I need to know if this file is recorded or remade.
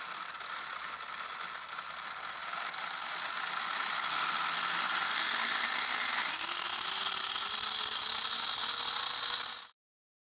recorded